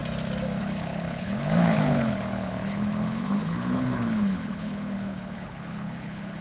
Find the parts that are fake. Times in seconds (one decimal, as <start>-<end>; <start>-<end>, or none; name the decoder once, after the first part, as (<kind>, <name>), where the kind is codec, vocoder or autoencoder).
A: 0.6-6.4 (codec, HILCodec)